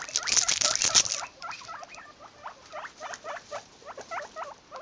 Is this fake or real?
real